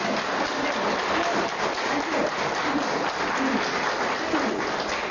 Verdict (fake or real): real